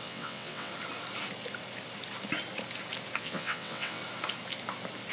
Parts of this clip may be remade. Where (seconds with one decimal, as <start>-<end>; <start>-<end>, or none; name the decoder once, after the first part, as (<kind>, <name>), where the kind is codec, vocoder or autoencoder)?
0.0-0.7 (vocoder, WaveNeXt); 3.2-4.0